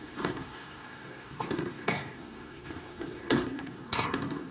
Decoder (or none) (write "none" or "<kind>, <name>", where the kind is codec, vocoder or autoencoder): codec, SNAC